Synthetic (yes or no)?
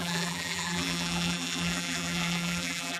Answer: yes